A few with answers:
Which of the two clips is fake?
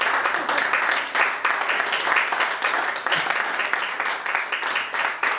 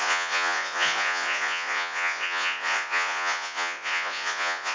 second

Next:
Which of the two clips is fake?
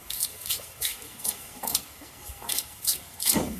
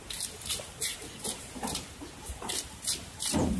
first